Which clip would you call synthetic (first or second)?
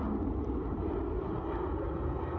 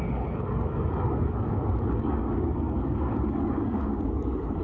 second